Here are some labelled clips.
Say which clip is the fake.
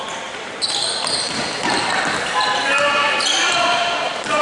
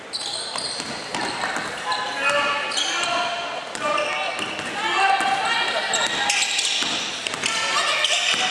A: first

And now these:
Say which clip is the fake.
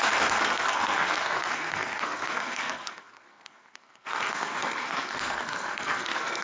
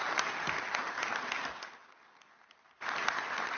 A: first